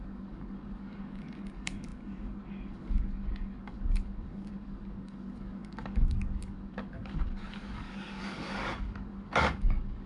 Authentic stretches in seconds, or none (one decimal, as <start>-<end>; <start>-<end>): none